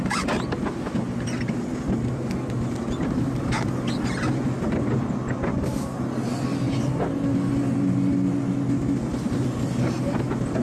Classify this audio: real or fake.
real